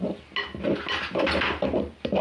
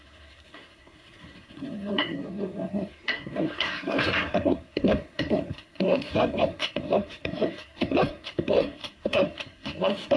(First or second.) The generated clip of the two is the second